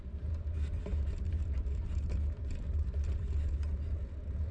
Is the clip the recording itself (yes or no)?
no